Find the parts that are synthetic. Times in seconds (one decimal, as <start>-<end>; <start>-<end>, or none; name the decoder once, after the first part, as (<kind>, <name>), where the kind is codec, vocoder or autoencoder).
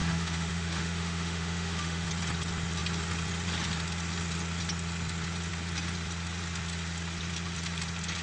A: 0.0-2.1 (autoencoder, DAC-VAE)